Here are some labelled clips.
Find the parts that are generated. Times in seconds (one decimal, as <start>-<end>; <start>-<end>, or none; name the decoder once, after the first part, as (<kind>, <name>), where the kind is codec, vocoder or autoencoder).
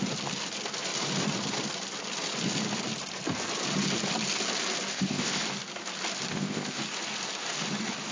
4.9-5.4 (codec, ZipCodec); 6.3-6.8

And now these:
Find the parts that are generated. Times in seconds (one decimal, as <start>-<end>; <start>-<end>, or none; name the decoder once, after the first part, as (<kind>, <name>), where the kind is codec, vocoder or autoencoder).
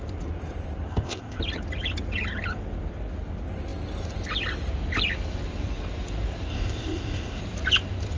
0.9-1.4 (codec, ZipCodec); 6.5-7.4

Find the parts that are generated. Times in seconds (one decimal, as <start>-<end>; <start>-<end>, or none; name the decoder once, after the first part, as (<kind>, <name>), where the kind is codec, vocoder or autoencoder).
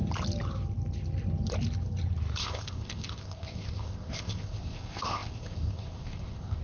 2.4-6.6 (codec, ZipCodec)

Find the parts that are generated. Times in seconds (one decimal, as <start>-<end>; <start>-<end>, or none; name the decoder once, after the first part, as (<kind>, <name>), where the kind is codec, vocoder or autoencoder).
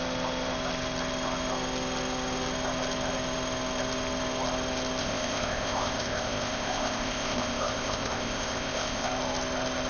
5.0-9.1 (codec, ZipCodec)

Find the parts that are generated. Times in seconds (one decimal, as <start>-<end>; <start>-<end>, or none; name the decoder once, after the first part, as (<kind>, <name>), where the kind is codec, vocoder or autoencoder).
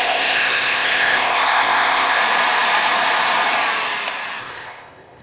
0.0-2.2 (codec, ZipCodec); 4.4-5.2